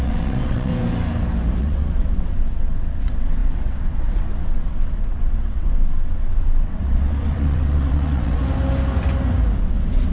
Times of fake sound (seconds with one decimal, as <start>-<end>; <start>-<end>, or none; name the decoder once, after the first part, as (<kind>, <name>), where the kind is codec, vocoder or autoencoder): 0.0-0.7 (vocoder, WaveNeXt); 1.6-8.4; 9.6-10.1